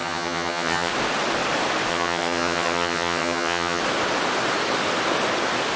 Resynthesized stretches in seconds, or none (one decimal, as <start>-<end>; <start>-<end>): 0.0-0.9; 1.9-3.8